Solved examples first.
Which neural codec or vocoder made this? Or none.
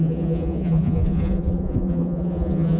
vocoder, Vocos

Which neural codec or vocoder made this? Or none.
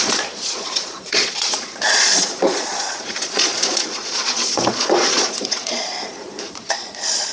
vocoder, Vocos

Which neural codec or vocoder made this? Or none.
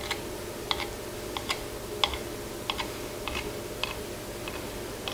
none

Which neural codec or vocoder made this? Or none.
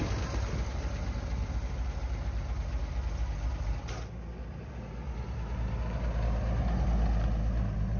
none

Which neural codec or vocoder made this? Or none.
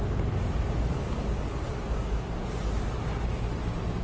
none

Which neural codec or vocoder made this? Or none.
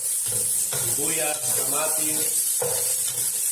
none